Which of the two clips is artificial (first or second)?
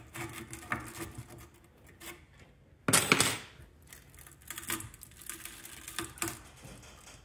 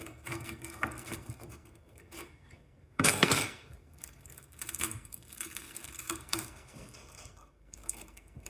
second